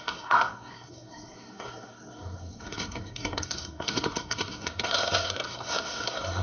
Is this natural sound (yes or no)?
no